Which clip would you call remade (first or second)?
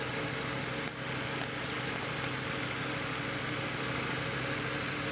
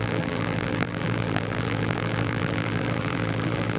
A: second